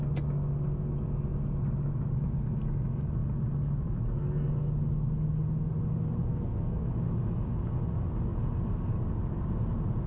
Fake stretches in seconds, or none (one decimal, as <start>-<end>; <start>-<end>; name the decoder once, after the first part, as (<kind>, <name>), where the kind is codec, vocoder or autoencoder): 6.3-6.9 (codec, SNAC)